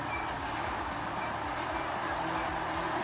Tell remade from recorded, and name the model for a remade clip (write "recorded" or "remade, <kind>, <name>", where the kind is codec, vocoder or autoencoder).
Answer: recorded